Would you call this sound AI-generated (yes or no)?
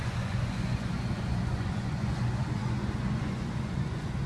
yes